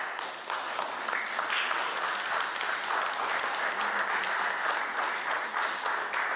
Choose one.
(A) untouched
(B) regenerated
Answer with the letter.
A